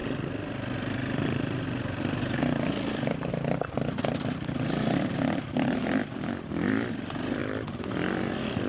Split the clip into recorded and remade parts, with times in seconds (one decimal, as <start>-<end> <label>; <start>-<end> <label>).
0.0-8.7 recorded